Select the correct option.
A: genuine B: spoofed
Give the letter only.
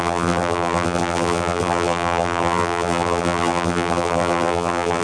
B